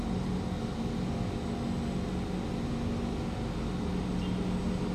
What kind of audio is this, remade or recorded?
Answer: recorded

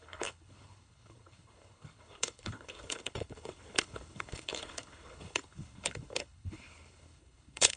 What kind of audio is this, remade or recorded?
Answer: remade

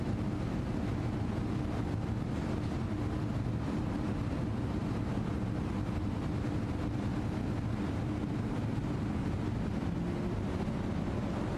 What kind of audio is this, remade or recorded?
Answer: recorded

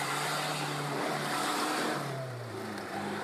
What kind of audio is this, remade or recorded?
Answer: remade